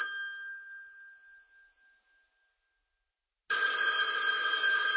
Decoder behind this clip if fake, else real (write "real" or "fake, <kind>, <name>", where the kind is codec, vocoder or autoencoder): real